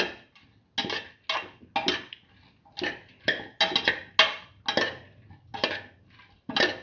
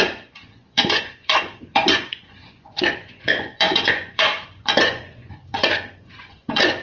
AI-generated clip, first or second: second